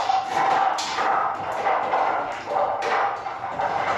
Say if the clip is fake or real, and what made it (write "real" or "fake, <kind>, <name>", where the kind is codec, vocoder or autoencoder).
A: real